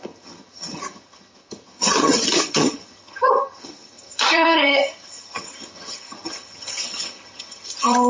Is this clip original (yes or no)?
no